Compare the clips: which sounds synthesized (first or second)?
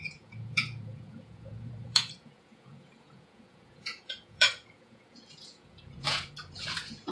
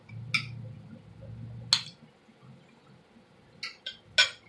first